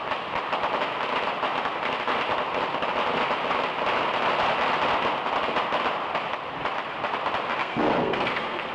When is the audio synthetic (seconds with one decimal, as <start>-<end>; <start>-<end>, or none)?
7.6-8.7